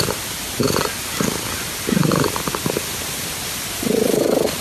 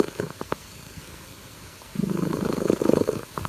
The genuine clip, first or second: first